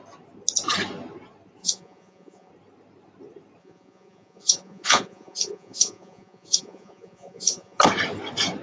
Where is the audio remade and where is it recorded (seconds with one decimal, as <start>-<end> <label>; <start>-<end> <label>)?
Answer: 0.0-1.6 recorded; 1.6-2.5 remade; 2.5-3.6 recorded; 3.6-7.8 remade; 7.8-8.6 recorded